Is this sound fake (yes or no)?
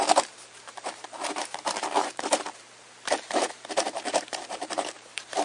yes